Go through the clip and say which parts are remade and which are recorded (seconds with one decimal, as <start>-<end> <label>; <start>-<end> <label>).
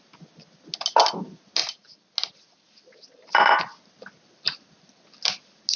0.0-5.8 recorded